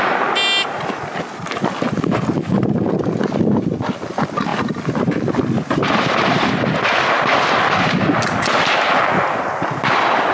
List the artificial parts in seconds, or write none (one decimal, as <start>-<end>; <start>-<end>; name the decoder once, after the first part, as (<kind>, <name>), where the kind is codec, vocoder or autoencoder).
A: none